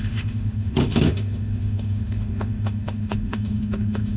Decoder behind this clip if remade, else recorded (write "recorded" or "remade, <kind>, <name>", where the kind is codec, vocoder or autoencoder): remade, autoencoder, DAC-VAE